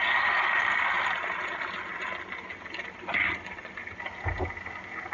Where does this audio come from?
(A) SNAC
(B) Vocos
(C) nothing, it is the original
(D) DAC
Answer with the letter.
C